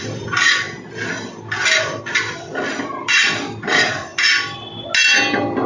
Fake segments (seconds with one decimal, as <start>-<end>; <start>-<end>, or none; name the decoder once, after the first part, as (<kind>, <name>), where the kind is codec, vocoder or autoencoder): 2.4-4.1 (vocoder, BigVGAN v2)